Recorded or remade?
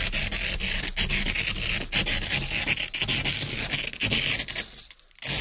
recorded